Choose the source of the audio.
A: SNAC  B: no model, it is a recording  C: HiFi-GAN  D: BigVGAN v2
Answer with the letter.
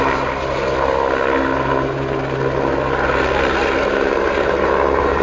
B